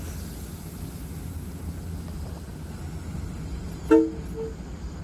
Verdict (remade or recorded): recorded